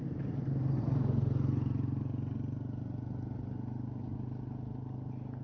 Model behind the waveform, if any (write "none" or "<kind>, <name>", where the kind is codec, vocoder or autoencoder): none